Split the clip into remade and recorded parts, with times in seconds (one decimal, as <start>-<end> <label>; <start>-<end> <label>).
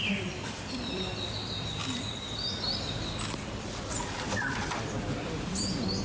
0.0-6.0 remade